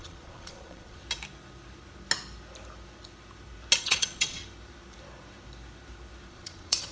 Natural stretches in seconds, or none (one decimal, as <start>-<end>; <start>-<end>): 1.0-3.8; 4.4-6.3